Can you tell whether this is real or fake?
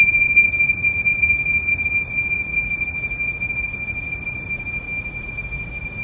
fake